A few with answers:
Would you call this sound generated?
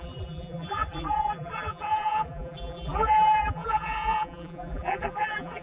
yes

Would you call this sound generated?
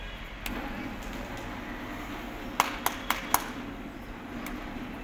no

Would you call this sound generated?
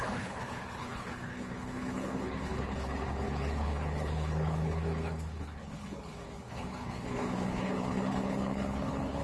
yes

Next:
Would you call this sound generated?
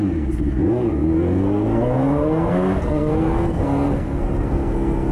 yes